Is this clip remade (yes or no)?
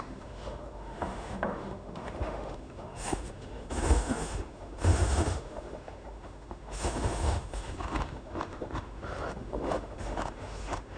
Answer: yes